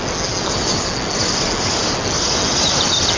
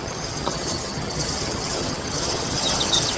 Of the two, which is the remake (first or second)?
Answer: second